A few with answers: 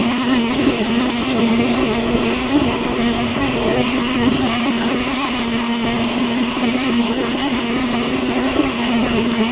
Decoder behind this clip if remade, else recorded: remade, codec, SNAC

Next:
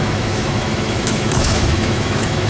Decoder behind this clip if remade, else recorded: remade, autoencoder, DAC-VAE